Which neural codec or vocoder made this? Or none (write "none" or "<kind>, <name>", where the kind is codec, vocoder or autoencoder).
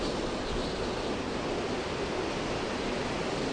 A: none